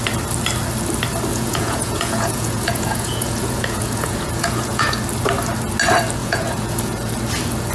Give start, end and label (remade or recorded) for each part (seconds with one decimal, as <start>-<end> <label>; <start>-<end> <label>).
0.0-1.3 recorded; 1.3-4.9 remade; 4.9-6.2 recorded; 6.2-7.1 remade; 7.1-7.7 recorded